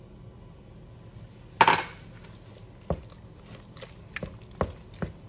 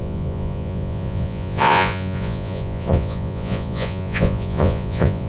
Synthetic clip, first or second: second